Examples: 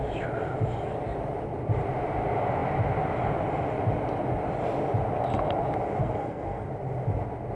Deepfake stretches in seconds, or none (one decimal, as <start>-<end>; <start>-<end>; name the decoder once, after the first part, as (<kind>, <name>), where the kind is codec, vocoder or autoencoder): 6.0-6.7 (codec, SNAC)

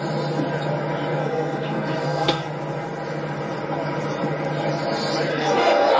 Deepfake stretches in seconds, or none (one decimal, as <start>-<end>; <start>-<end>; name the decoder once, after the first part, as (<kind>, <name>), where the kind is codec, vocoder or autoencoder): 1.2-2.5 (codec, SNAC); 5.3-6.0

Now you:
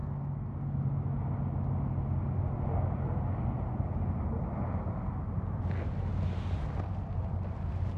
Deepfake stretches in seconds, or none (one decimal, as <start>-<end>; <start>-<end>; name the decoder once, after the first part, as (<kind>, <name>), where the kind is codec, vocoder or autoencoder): none

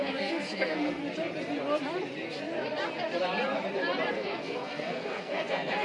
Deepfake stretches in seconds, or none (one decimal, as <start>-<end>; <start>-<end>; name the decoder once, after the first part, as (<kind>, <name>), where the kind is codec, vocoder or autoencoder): 0.0-1.0 (codec, SNAC); 4.1-5.8

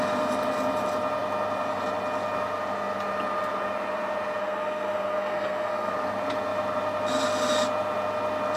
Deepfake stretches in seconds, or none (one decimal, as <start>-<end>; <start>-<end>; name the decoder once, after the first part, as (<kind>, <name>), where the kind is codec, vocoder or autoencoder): 4.4-5.9 (codec, SNAC)